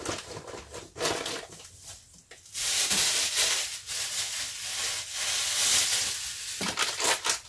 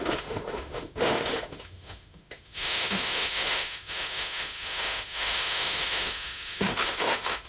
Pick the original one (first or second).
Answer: first